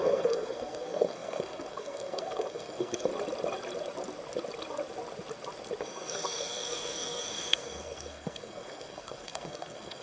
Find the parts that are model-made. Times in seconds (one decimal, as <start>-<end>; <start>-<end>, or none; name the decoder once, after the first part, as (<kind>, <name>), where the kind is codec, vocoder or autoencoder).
0.0-3.1 (codec, SNAC); 5.8-10.0